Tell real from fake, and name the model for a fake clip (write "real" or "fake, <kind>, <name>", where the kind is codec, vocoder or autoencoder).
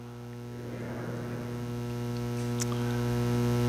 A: real